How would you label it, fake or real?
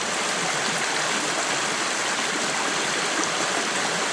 real